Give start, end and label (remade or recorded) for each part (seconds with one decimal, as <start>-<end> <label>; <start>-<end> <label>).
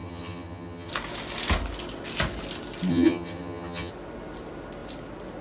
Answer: 0.0-0.9 remade; 0.9-2.9 recorded; 2.9-3.9 remade; 3.9-5.4 recorded